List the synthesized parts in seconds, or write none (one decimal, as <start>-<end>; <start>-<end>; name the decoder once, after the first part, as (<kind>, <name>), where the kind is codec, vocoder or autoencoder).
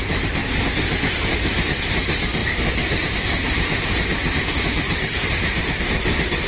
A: 0.4-1.9 (vocoder, BigVGAN v2); 2.4-5.9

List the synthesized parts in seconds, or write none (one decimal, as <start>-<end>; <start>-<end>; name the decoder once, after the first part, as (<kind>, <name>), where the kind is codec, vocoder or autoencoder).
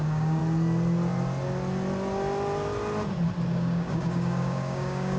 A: 0.0-0.4 (codec, DAC); 3.5-5.2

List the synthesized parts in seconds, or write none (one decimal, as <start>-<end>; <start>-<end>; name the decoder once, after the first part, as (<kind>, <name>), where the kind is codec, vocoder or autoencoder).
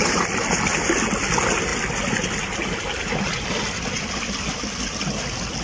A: none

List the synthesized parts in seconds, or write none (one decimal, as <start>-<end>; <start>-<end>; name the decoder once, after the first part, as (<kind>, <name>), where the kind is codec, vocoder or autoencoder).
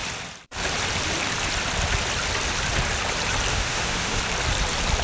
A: 3.5-4.2 (autoencoder, DAC-VAE)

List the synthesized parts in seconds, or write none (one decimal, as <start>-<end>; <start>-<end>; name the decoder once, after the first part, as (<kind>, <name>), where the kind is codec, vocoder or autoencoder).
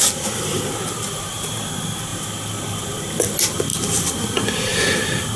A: none